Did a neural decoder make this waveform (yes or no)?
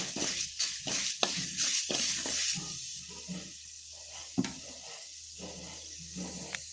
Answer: no